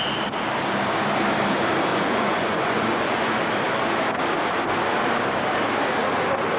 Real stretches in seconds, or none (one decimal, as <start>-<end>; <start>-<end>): 0.0-1.9; 3.4-6.6